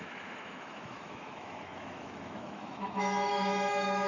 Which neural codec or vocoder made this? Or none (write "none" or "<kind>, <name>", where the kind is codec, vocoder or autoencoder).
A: autoencoder, DAC-VAE